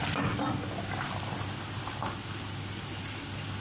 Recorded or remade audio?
recorded